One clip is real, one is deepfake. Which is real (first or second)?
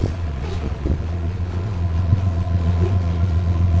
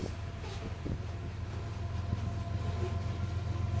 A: second